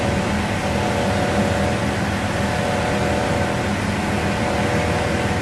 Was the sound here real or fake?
real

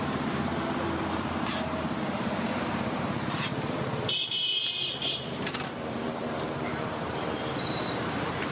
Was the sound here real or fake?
fake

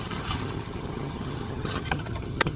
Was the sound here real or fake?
fake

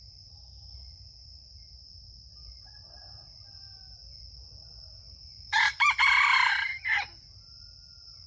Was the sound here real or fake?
fake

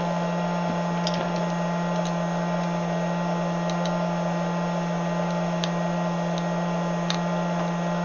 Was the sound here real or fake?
real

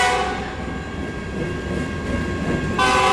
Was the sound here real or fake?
real